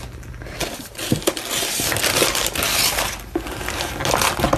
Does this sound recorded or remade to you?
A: recorded